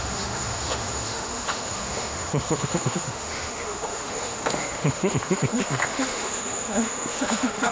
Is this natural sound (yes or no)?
no